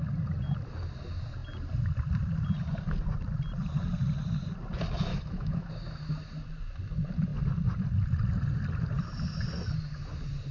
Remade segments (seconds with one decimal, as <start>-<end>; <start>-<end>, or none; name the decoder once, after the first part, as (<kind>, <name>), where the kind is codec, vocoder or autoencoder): 5.1-5.7 (autoencoder, DAC-VAE)